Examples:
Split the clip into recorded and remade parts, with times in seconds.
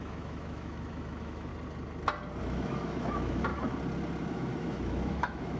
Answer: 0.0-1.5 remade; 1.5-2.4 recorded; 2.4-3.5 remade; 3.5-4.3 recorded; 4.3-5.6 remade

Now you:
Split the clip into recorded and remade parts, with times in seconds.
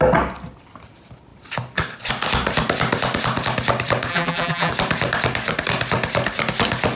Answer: 0.0-4.1 recorded; 4.1-4.7 remade; 4.7-6.9 recorded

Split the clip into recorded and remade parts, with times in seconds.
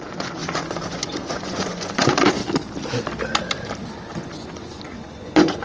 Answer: 0.0-2.4 remade; 2.4-4.2 recorded; 4.2-5.6 remade